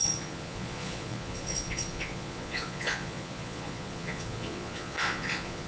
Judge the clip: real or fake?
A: fake